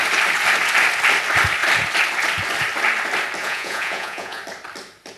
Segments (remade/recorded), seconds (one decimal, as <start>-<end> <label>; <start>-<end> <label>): 0.0-3.4 recorded; 3.4-4.4 remade; 4.4-5.2 recorded